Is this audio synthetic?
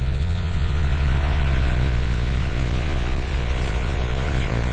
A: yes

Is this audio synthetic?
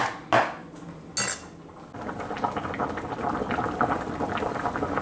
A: no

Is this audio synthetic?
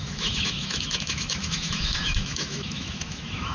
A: yes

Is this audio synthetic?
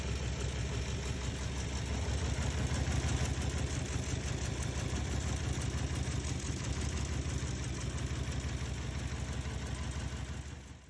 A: no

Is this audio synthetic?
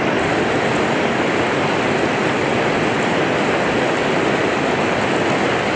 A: no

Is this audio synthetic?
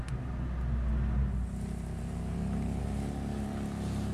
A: no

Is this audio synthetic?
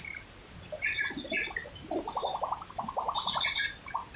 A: no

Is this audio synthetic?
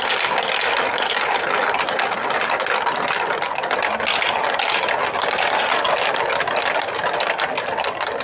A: no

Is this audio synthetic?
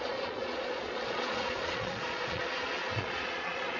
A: yes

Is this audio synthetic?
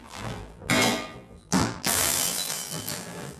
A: yes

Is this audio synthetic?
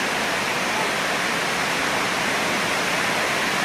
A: no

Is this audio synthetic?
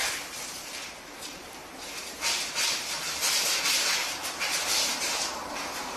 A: yes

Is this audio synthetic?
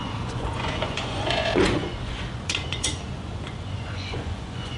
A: yes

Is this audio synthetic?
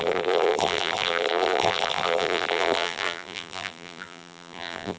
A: yes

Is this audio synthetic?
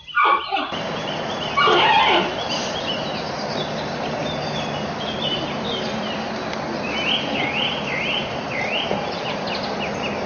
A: no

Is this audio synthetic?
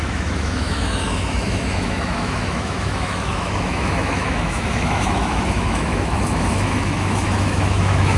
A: yes